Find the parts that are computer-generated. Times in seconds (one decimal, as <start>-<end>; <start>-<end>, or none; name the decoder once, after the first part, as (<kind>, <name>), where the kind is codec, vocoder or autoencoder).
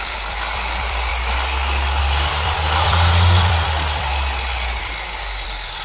0.0-1.1 (vocoder, BigVGAN v2); 2.0-4.1; 4.8-5.8